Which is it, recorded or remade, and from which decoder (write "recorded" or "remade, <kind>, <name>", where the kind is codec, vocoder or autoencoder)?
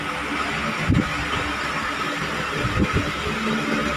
recorded